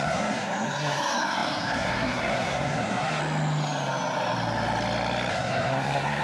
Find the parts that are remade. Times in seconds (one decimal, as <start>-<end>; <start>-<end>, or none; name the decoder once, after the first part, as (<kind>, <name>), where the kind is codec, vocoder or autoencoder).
0.0-3.2 (codec, SNAC); 5.3-6.2